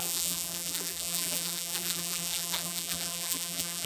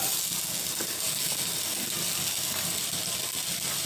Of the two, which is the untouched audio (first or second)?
second